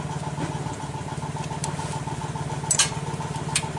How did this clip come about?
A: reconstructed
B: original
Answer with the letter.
B